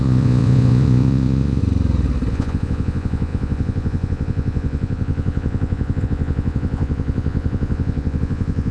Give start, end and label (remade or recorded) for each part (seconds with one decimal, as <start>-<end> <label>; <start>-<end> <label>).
0.0-1.6 remade; 1.6-2.3 recorded; 2.3-8.7 remade